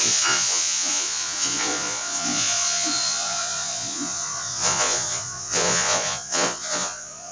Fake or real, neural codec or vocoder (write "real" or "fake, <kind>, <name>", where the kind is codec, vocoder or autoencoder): fake, vocoder, Vocos